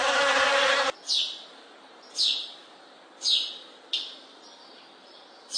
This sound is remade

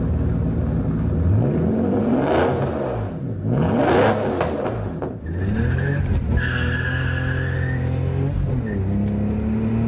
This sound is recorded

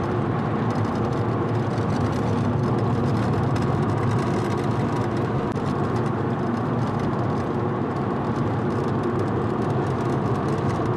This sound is recorded